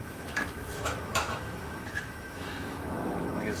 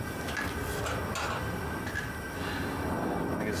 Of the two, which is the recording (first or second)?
second